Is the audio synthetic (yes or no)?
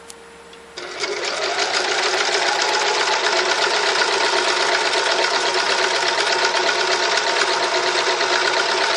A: no